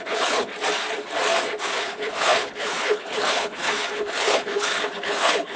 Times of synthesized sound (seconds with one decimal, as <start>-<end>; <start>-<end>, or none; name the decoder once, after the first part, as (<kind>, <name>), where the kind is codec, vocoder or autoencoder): 0.0-0.5 (codec, HILCodec); 1.6-5.6